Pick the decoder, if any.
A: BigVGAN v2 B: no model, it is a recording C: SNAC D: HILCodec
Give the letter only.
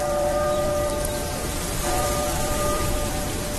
A